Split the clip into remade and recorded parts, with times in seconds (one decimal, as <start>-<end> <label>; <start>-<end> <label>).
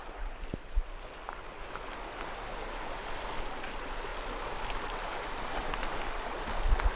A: 0.0-7.0 recorded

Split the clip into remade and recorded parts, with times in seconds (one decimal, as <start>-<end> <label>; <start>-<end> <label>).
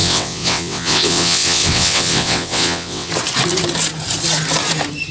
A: 0.0-3.1 remade; 3.1-5.1 recorded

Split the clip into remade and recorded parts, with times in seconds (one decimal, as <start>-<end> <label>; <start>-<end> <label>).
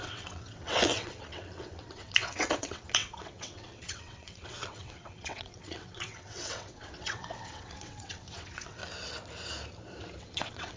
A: 0.0-8.8 remade; 8.8-10.2 recorded; 10.2-10.8 remade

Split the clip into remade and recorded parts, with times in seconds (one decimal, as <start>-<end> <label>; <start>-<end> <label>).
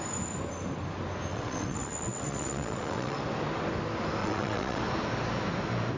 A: 0.0-1.3 recorded; 1.3-3.2 remade; 3.2-4.2 recorded; 4.2-4.8 remade; 4.8-6.0 recorded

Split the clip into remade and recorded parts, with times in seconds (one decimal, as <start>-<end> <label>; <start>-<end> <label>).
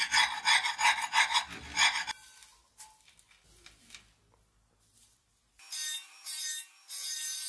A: 0.0-7.5 recorded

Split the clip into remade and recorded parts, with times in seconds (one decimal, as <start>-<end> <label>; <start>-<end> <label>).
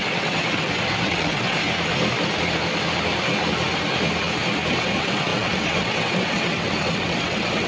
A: 0.0-1.6 remade; 1.6-4.7 recorded; 4.7-7.7 remade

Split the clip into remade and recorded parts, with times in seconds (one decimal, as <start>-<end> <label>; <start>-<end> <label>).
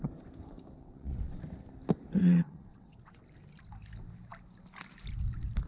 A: 0.0-0.8 recorded; 0.8-1.4 remade; 1.4-2.2 recorded; 2.2-3.2 remade; 3.2-5.7 recorded